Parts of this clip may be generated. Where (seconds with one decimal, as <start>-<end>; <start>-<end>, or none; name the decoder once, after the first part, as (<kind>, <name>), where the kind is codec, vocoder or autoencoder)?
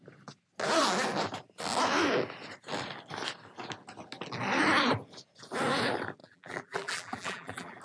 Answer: 6.2-7.8 (vocoder, BigVGAN v2)